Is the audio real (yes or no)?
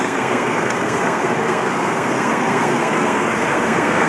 no